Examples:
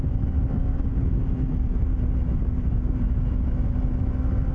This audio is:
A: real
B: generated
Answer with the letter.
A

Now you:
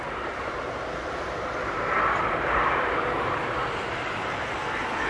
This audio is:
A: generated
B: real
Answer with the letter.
A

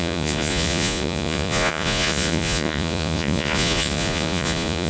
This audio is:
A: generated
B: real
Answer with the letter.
A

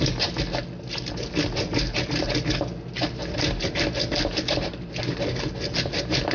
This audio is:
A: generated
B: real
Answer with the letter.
B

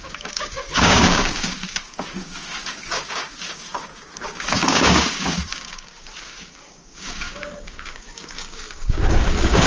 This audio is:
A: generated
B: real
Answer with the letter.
A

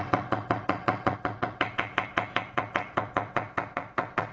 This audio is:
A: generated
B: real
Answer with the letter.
A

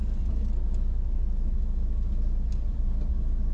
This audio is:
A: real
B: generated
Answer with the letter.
A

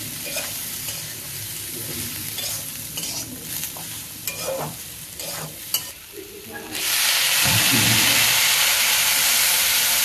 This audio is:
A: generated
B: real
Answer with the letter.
A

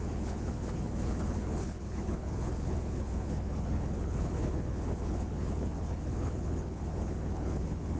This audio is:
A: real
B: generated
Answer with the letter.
B